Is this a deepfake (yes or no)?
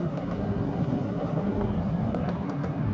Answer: yes